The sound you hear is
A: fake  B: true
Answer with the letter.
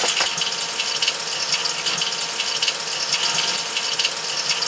B